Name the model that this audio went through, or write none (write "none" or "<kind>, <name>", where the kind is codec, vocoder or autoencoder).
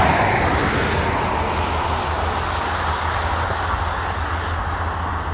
none